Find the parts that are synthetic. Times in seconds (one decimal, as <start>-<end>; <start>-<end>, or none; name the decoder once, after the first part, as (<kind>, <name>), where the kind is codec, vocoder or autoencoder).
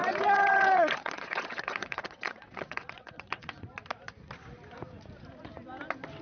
0.0-3.7 (vocoder, WaveNeXt)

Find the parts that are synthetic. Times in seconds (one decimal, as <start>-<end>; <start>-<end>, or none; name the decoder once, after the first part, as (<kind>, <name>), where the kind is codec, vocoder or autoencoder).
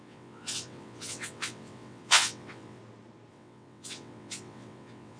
0.0-2.8 (vocoder, WaveNeXt); 3.3-5.2